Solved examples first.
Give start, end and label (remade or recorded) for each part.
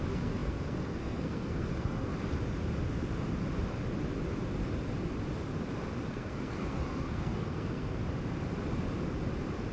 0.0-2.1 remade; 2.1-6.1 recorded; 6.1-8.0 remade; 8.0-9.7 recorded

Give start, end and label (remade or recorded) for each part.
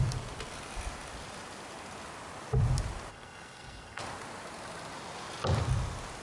0.0-3.1 recorded; 3.1-4.0 remade; 4.0-6.2 recorded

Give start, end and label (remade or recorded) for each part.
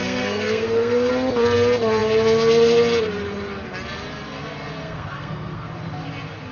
0.0-1.1 remade; 1.1-4.8 recorded; 4.8-5.7 remade; 5.7-6.5 recorded